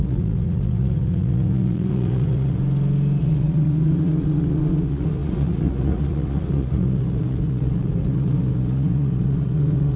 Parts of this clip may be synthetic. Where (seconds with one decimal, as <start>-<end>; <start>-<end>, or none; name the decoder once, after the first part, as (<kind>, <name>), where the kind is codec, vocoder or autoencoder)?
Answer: 0.0-2.6 (vocoder, Vocos); 3.2-10.0